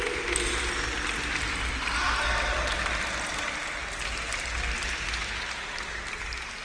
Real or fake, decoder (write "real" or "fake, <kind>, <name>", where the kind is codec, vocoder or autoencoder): real